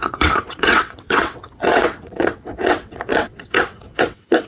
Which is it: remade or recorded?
remade